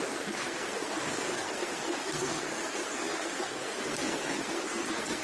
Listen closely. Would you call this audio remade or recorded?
remade